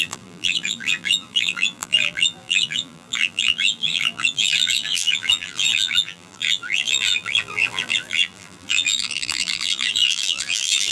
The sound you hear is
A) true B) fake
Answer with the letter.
B